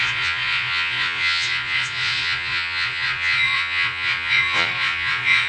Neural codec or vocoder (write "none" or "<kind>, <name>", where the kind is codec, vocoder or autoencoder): vocoder, Vocos